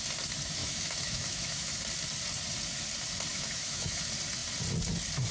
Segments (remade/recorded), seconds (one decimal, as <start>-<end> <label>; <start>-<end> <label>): 0.0-0.6 recorded; 0.6-1.8 remade; 1.8-3.3 recorded; 3.3-4.0 remade; 4.0-5.3 recorded